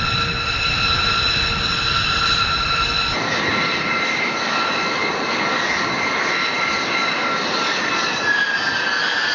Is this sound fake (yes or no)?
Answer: no